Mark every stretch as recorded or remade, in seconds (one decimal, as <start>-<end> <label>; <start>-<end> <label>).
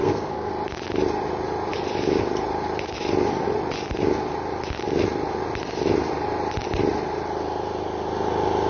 0.0-0.5 remade; 0.5-8.7 recorded